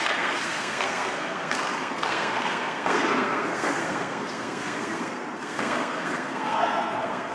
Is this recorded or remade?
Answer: remade